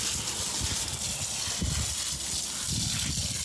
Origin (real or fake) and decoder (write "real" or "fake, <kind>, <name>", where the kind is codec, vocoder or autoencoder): real